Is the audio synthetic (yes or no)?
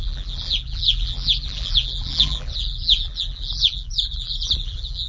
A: yes